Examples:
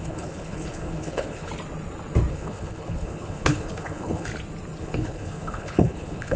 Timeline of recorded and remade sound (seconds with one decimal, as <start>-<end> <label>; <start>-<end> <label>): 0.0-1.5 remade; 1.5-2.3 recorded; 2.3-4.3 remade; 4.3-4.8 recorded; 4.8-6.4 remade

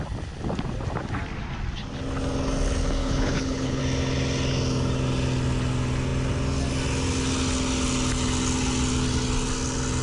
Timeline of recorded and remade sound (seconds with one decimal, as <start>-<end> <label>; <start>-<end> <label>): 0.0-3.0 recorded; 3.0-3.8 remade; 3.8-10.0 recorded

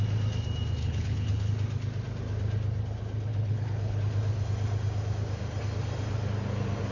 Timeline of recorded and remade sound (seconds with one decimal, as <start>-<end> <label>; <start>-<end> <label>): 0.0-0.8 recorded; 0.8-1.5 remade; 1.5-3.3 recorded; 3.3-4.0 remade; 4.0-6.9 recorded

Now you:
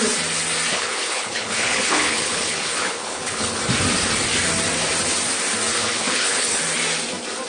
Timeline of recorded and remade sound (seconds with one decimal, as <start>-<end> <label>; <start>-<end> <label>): 0.0-0.7 recorded; 0.7-3.6 remade; 3.6-5.7 recorded; 5.7-6.6 remade; 6.6-7.5 recorded

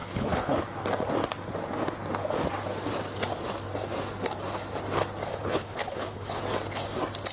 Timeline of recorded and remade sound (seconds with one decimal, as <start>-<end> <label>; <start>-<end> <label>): 0.0-0.6 remade; 0.6-5.3 recorded; 5.3-6.4 remade; 6.4-7.3 recorded

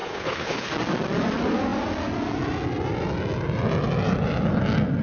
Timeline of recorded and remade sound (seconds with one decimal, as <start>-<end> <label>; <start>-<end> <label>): 0.0-0.7 remade; 0.7-5.0 recorded

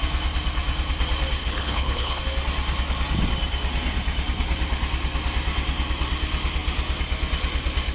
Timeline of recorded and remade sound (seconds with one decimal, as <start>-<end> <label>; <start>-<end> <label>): 0.0-1.4 recorded; 1.4-2.2 remade; 2.2-7.9 recorded